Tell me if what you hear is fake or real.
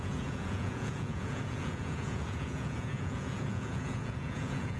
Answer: fake